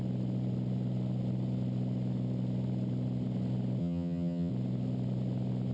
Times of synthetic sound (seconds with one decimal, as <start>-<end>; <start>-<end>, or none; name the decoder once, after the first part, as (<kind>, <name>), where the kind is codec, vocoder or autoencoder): 3.8-4.5 (vocoder, HiFi-GAN)